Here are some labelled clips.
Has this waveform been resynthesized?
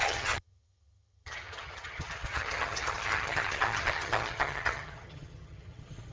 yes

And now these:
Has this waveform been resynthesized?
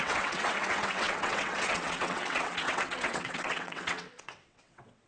yes